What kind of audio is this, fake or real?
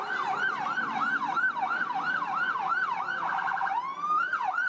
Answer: fake